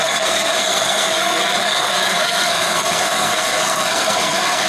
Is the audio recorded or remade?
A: remade